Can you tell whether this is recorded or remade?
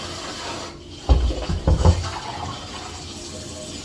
recorded